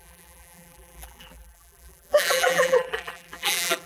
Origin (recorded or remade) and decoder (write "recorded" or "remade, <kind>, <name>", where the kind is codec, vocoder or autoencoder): remade, vocoder, BigVGAN v2